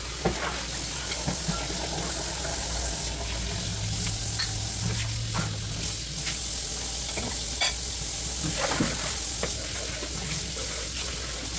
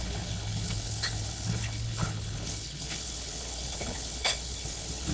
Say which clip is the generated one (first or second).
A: second